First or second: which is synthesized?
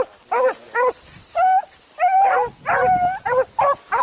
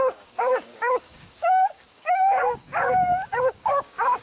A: second